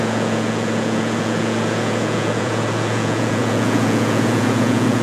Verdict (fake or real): fake